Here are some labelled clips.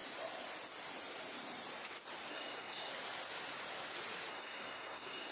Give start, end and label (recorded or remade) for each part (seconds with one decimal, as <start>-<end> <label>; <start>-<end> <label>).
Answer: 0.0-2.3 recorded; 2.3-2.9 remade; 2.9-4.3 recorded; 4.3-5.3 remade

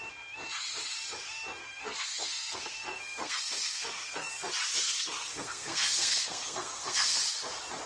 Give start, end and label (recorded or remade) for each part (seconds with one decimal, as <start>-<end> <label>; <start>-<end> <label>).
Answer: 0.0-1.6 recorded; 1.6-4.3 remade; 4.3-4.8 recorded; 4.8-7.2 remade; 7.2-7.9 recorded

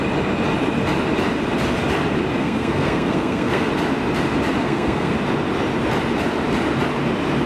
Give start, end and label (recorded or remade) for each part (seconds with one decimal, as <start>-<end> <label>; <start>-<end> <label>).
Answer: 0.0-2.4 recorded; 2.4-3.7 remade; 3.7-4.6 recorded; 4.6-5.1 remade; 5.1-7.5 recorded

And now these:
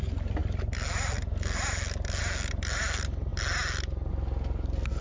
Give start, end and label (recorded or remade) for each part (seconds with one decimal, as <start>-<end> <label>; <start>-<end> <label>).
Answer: 0.0-5.0 recorded